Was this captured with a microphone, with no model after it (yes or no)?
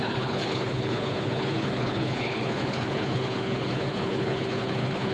no